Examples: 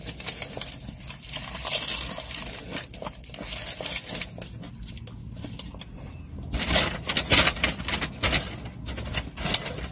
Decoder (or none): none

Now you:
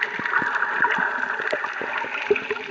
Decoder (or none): none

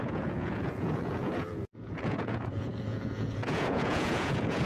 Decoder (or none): vocoder, Vocos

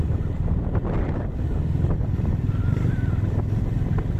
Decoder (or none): none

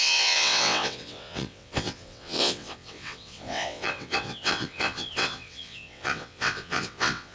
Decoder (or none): vocoder, WaveNeXt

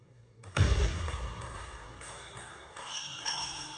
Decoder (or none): codec, SNAC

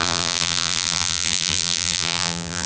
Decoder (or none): vocoder, BigVGAN v2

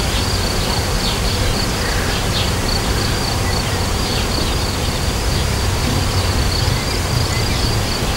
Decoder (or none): none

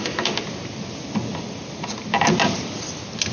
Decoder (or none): none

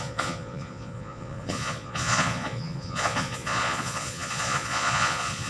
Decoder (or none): vocoder, Vocos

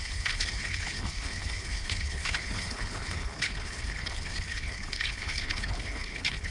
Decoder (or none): codec, HILCodec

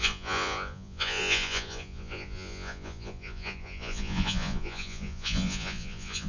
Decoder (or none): vocoder, Vocos